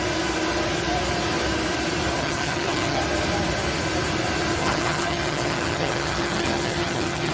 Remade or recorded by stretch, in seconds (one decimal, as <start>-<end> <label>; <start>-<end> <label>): 0.0-2.2 recorded; 2.2-3.0 remade; 3.0-4.6 recorded; 4.6-7.3 remade